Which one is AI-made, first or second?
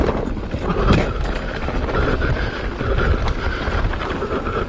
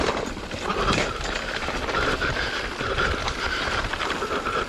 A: second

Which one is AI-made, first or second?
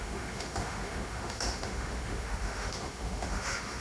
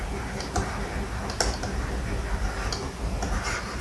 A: first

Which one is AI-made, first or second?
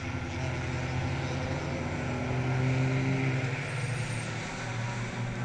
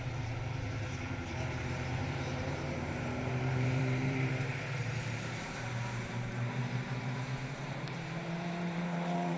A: second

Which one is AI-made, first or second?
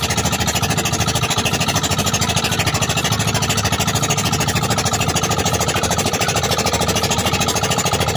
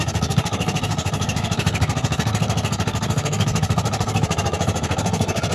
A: second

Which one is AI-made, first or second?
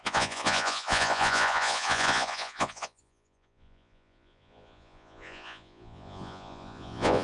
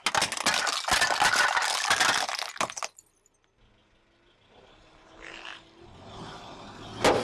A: first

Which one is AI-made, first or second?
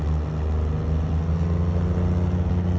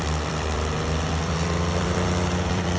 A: second